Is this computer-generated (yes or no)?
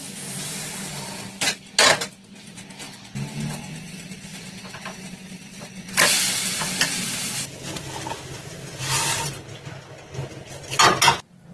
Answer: no